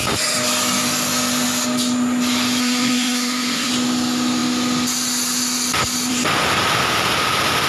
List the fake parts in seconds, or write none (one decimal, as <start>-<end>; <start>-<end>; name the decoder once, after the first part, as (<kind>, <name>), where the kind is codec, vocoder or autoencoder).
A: 2.6-3.7 (codec, SNAC)